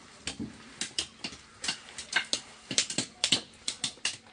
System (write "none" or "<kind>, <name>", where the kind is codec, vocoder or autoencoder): none